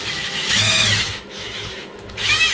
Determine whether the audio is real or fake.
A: fake